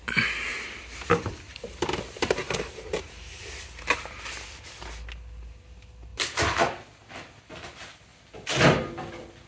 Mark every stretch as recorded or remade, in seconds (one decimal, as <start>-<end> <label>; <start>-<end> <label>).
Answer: 0.0-0.5 recorded; 0.5-1.6 remade; 1.6-9.5 recorded